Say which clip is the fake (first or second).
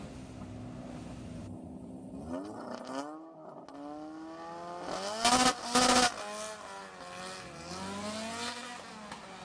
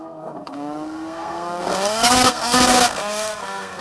second